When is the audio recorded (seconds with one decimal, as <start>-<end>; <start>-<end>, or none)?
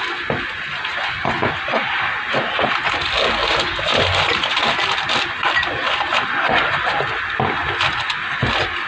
0.0-1.4; 2.3-3.9; 6.7-8.9